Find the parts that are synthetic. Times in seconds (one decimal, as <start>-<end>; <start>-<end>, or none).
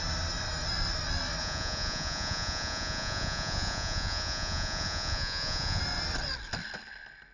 1.4-5.8